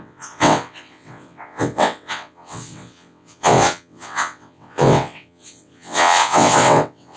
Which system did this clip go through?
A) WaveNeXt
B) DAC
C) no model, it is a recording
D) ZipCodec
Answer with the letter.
A